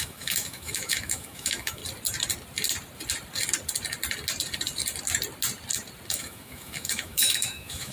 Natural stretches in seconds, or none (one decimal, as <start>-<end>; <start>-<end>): 1.8-6.1